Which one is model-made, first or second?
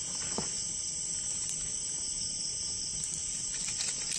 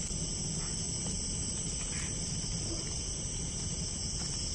first